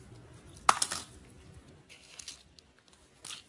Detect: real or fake real